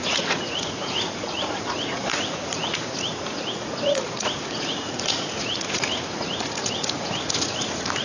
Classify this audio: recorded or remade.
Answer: remade